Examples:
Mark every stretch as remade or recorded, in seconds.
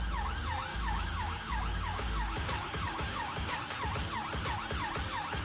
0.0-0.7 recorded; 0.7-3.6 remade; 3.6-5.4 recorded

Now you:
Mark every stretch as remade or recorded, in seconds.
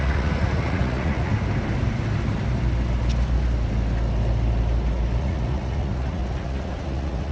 0.0-1.3 remade; 1.3-5.2 recorded; 5.2-7.3 remade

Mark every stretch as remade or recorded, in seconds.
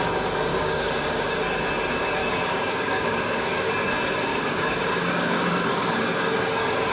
0.0-0.5 recorded; 0.5-1.4 remade; 1.4-2.2 recorded; 2.2-3.7 remade; 3.7-4.3 recorded; 4.3-6.9 remade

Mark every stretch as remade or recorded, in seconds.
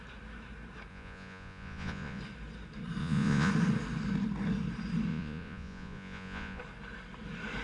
0.0-0.9 recorded; 0.9-2.2 remade; 2.2-3.0 recorded; 3.0-3.5 remade; 3.5-5.1 recorded; 5.1-6.6 remade; 6.6-7.6 recorded